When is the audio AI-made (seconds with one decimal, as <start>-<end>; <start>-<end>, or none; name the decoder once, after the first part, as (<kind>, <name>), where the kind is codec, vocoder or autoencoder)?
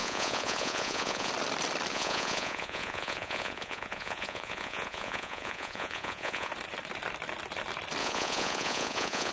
0.0-1.3 (vocoder, Vocos); 1.9-6.5; 8.0-9.3